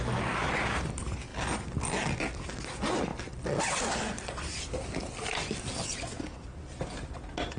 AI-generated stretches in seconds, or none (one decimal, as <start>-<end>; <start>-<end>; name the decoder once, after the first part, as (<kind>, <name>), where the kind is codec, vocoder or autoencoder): none